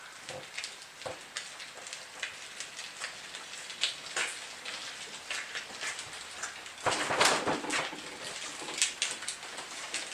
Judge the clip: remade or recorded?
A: recorded